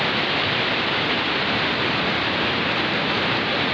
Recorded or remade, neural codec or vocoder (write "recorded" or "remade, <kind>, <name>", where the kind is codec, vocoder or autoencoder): recorded